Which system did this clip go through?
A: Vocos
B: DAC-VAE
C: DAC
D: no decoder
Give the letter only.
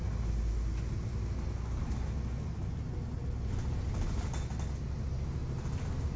D